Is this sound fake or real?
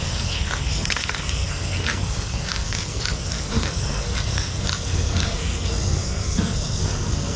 fake